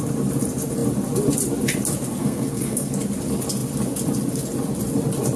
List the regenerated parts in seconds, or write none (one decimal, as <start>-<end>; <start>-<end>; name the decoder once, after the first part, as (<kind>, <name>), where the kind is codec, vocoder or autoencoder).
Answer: 2.2-2.9 (codec, SNAC)